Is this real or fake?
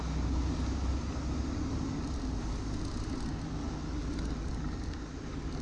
real